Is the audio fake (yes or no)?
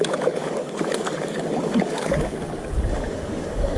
yes